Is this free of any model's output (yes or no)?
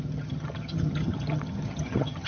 no